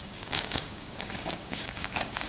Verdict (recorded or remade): remade